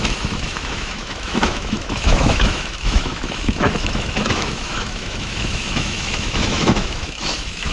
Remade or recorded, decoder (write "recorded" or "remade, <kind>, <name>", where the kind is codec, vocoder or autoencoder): remade, autoencoder, DAC-VAE